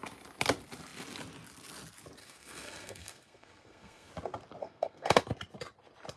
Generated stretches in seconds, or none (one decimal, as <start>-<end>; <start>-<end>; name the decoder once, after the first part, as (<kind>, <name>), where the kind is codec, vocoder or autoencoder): 2.2-4.1 (codec, SNAC); 4.6-5.2